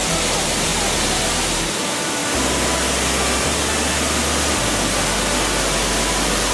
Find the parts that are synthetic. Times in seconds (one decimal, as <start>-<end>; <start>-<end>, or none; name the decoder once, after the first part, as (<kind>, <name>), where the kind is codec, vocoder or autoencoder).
none